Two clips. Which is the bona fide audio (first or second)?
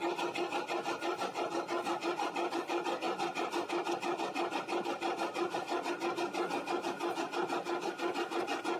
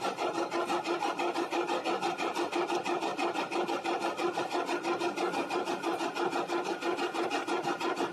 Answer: first